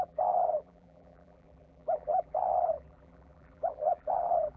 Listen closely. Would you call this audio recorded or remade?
remade